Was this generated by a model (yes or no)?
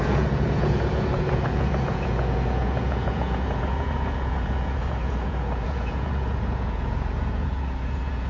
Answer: yes